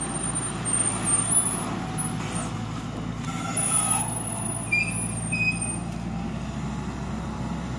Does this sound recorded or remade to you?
recorded